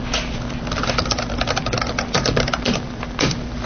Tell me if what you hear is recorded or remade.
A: recorded